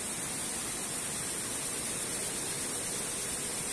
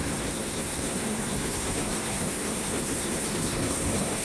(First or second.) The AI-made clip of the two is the second